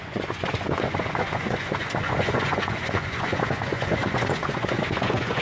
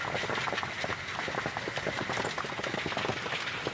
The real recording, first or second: second